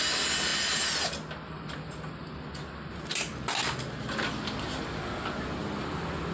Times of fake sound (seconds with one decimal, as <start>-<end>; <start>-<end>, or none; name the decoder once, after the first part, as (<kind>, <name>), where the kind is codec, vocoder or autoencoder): none